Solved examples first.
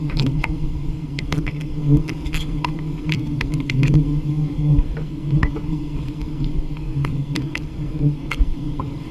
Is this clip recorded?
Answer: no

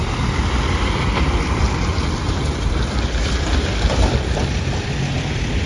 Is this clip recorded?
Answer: no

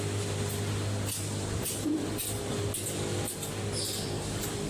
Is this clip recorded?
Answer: yes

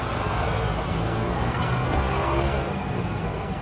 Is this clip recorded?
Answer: no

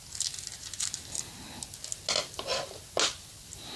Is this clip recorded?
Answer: yes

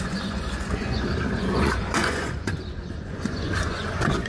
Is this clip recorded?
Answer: no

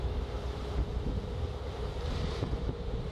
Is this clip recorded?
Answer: no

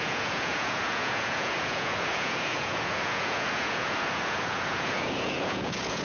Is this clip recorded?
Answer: no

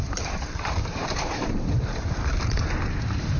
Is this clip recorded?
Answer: no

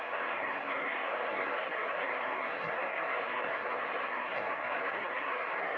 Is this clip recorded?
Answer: no